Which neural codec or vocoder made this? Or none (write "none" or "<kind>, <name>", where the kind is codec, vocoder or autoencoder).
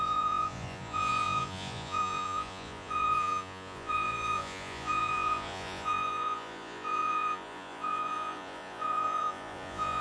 vocoder, Vocos